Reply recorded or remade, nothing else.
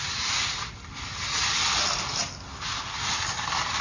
recorded